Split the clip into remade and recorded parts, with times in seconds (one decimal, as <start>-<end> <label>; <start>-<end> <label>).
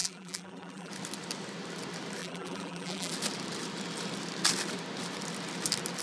0.0-0.9 remade; 0.9-2.2 recorded; 2.2-3.1 remade; 3.1-6.0 recorded